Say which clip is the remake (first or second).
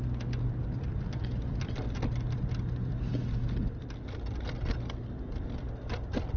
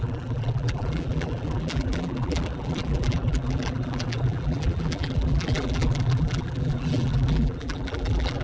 second